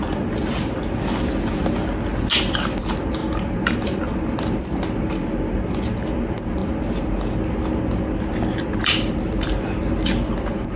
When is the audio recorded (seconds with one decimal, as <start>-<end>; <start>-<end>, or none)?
0.0-3.2; 4.0-10.8